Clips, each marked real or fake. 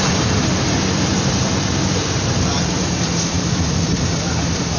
fake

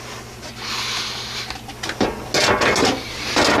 real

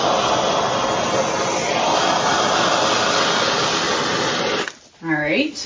real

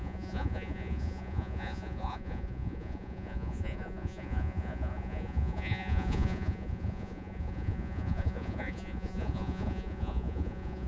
fake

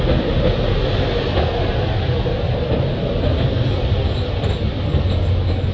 real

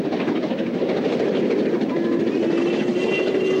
real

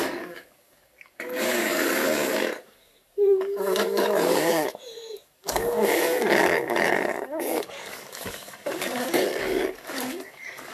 fake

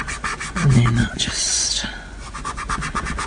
fake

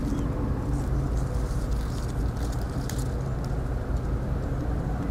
real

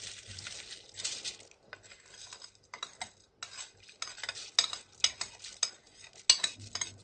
real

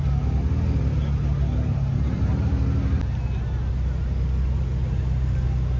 real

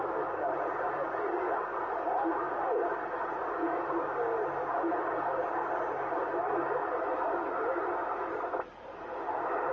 real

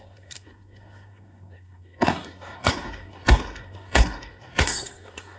fake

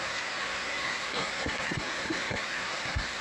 fake